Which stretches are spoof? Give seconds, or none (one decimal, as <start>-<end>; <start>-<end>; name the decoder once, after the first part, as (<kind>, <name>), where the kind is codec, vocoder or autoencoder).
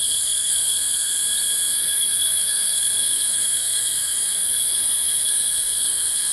0.0-1.2 (codec, SNAC); 1.8-6.3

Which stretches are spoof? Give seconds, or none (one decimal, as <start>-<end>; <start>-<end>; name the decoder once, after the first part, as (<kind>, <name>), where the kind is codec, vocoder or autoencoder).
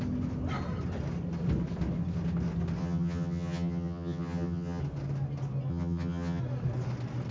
2.8-4.8 (vocoder, HiFi-GAN); 5.7-6.4